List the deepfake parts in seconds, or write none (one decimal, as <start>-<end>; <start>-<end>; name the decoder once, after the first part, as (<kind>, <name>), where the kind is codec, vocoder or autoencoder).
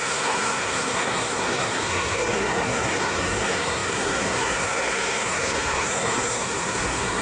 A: 0.0-7.2 (codec, SNAC)